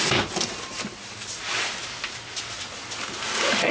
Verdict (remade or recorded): recorded